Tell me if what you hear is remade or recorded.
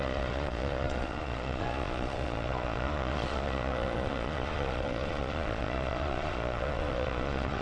remade